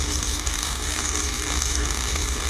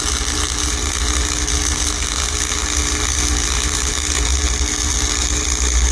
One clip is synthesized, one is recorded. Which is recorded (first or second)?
second